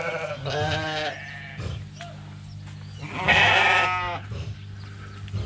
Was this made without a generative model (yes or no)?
yes